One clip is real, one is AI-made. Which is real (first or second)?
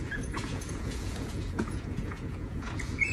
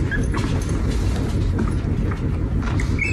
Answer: second